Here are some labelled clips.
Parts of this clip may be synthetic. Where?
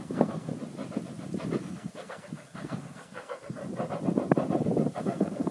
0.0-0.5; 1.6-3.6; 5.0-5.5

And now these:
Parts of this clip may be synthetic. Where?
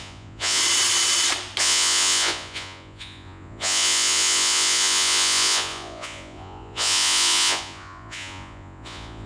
0.0-0.6; 1.6-9.3